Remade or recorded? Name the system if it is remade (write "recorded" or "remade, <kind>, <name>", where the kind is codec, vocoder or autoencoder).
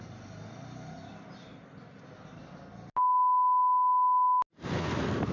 recorded